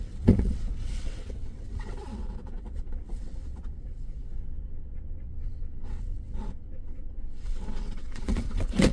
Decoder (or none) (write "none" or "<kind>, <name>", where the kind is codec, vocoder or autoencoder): vocoder, WaveNeXt